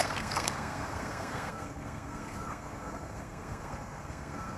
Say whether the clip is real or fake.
fake